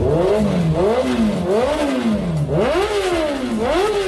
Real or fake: real